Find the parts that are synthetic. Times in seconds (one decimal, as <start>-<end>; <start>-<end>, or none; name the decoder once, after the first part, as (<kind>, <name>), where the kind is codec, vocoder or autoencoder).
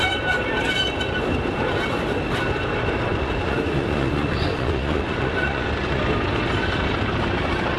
3.1-6.0 (vocoder, Vocos)